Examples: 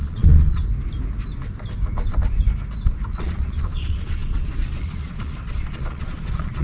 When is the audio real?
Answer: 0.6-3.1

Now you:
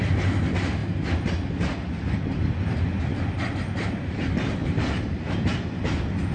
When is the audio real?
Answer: 0.0-6.3

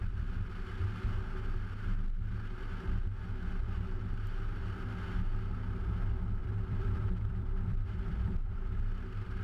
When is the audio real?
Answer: 0.8-6.4; 8.4-9.4

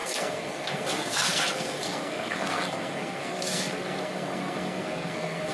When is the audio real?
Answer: none

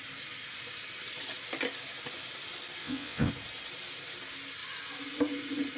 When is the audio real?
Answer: 0.0-2.8; 3.3-5.8

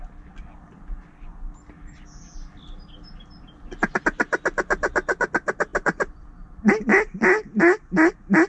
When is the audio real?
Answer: 0.0-5.7; 6.2-8.5

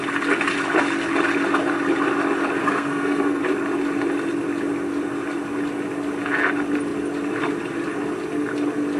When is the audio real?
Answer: 0.0-2.6; 3.4-9.0

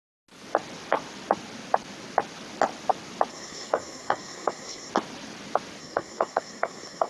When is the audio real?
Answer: 0.0-3.3; 4.9-5.8